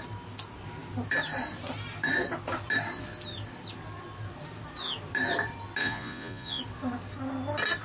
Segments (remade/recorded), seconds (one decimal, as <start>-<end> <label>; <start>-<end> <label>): 0.0-5.8 recorded; 5.8-6.6 remade; 6.6-7.8 recorded